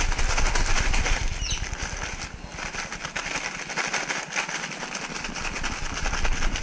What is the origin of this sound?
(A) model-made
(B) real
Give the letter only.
B